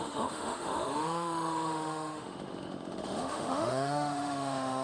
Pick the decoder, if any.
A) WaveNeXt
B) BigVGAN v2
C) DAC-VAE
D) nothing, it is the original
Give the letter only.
C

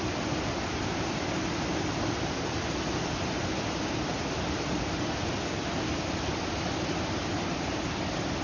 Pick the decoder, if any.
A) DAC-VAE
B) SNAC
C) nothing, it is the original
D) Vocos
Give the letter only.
C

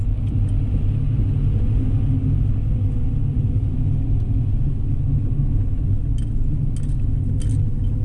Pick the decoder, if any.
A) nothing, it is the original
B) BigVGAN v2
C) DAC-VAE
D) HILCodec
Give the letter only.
A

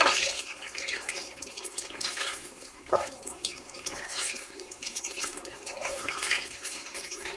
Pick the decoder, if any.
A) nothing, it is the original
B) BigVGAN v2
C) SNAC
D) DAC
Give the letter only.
C